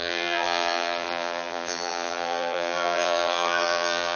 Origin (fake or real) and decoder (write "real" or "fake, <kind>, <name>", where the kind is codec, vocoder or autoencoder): fake, vocoder, BigVGAN v2